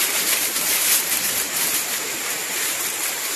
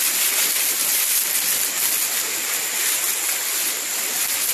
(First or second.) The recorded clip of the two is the second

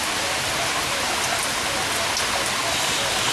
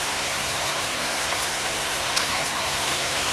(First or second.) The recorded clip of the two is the first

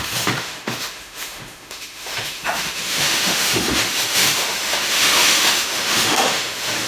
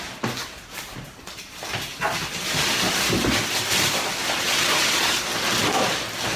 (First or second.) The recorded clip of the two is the second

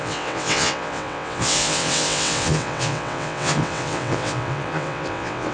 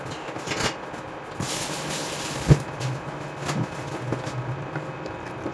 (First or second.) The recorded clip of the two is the second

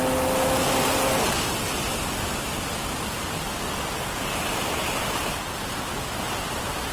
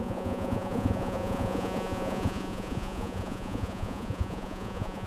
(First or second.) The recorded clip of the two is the first